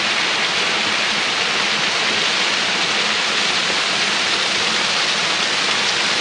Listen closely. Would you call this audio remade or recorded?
recorded